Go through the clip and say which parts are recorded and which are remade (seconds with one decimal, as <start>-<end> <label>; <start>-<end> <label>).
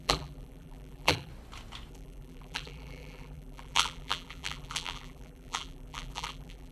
0.0-1.3 remade; 1.3-1.9 recorded; 1.9-6.7 remade